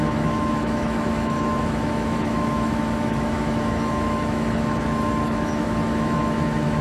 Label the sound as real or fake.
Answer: fake